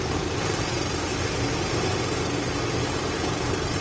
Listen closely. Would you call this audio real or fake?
real